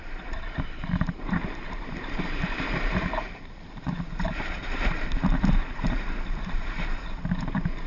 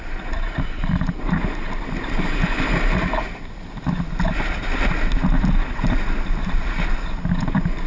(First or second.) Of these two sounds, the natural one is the second